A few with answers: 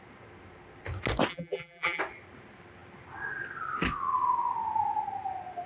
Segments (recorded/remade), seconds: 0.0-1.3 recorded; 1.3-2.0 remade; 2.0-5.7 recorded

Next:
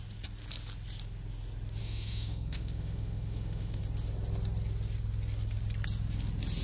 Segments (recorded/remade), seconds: 0.0-1.8 recorded; 1.8-3.8 remade; 3.8-6.6 recorded

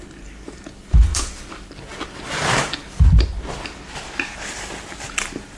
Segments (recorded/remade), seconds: 0.0-5.6 recorded

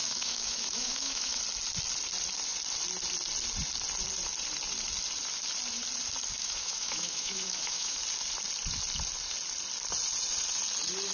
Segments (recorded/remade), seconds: 0.0-1.4 remade; 1.4-6.4 recorded; 6.4-8.0 remade; 8.0-11.1 recorded